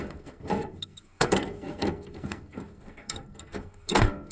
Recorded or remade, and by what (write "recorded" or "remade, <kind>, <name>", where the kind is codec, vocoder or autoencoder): remade, codec, SNAC